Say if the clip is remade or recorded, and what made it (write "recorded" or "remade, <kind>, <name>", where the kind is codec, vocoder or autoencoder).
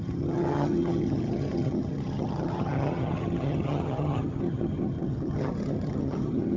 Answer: remade, vocoder, HiFi-GAN